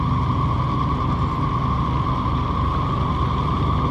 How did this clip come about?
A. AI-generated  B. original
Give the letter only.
B